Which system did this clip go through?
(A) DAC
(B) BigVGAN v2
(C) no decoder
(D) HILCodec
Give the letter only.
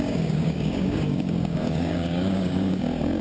A